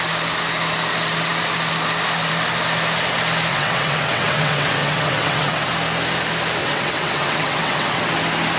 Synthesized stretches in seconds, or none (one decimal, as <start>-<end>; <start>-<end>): 3.5-5.7; 6.6-8.1